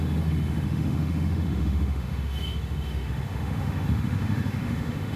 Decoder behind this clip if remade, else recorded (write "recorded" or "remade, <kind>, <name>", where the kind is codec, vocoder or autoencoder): remade, autoencoder, DAC-VAE